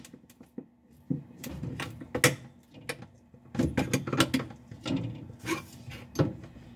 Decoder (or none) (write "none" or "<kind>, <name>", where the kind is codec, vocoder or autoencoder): none